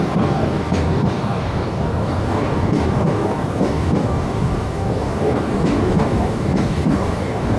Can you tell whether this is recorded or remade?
remade